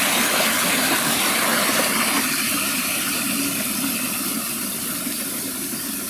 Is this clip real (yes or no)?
yes